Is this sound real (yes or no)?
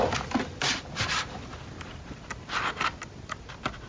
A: yes